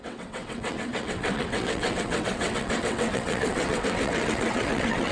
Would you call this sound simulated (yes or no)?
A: yes